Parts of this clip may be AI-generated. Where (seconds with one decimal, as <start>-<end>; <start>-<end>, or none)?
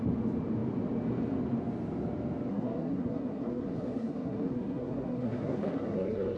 2.5-6.4